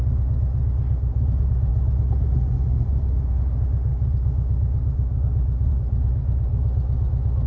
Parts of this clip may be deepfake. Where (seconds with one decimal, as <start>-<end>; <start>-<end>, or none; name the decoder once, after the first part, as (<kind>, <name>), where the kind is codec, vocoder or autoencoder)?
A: 3.9-5.7 (codec, DAC)